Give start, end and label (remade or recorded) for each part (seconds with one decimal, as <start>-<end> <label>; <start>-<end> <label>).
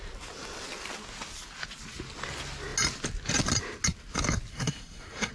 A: 0.0-4.5 recorded; 4.5-5.3 remade